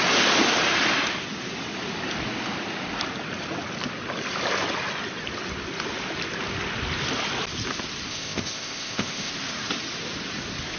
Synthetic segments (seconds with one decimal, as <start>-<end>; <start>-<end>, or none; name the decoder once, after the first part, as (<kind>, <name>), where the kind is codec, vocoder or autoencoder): 8.1-9.3 (codec, ZipCodec)